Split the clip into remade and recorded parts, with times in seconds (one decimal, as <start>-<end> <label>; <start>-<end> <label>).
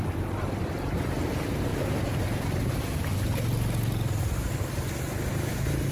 0.0-5.9 recorded